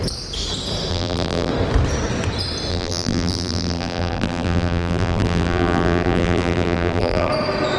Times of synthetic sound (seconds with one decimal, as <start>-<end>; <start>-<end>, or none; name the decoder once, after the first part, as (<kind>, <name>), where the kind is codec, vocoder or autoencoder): 0.9-1.5 (vocoder, BigVGAN v2); 2.7-7.3